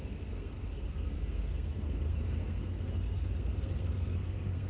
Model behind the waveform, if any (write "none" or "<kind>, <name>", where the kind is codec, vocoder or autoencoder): codec, SNAC